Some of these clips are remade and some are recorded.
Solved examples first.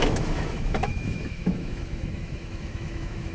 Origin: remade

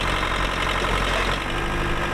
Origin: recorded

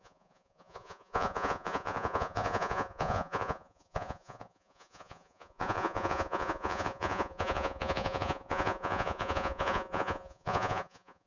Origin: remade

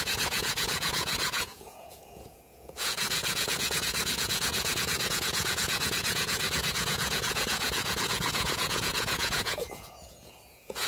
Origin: remade